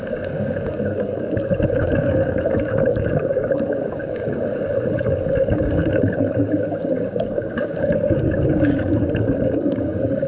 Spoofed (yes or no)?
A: yes